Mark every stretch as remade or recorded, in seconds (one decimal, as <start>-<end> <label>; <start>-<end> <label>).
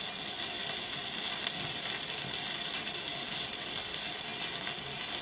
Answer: 0.0-5.2 recorded